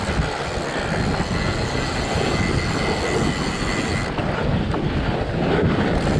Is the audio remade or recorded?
recorded